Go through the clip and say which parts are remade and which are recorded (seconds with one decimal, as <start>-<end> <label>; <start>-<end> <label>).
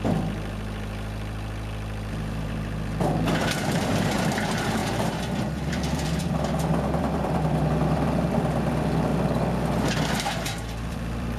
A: 0.0-9.1 remade; 9.1-10.1 recorded; 10.1-11.4 remade